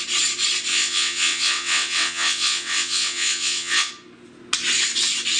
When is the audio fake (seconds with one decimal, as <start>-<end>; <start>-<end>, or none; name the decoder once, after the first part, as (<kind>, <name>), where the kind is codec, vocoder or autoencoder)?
0.7-3.9 (vocoder, WaveNeXt)